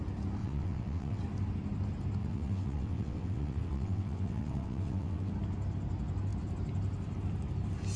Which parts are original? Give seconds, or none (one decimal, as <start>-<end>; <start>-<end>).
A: 0.0-0.4; 1.2-2.2; 5.3-8.0